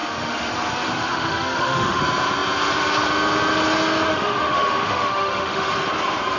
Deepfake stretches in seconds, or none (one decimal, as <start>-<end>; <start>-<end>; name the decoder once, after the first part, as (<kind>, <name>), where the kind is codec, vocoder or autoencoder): 0.0-0.5 (autoencoder, DAC-VAE); 0.9-2.0; 4.1-5.7